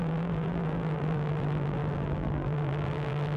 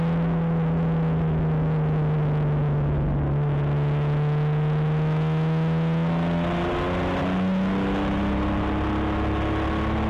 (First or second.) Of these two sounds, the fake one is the first